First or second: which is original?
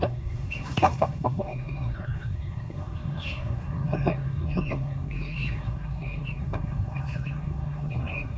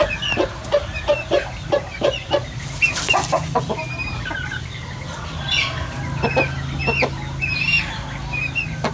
second